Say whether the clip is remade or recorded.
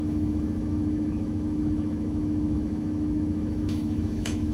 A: remade